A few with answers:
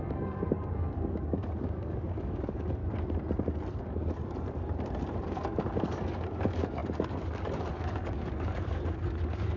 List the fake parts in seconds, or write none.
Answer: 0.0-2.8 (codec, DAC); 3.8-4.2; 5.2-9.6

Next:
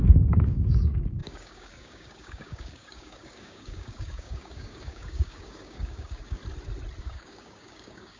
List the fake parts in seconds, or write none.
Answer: 0.0-6.4 (codec, DAC); 7.0-8.2

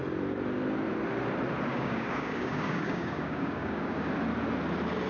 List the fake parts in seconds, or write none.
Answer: 1.7-4.1 (codec, DAC)

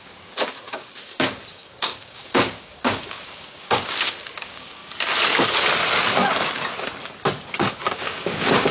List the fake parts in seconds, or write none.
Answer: 0.0-4.8 (codec, DAC); 7.5-8.7

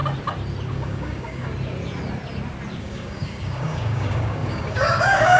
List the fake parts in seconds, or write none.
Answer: 0.7-1.5 (codec, DAC); 2.8-5.4